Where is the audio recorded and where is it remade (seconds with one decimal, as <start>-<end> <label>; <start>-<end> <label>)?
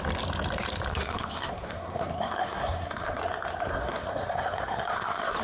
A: 0.0-0.9 recorded; 0.9-3.2 remade; 3.2-3.7 recorded; 3.7-5.4 remade